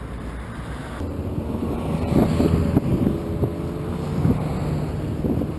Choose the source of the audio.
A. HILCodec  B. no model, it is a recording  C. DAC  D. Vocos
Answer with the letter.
B